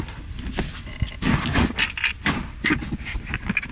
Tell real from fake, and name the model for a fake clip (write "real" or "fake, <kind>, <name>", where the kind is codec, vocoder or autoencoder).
fake, vocoder, BigVGAN v2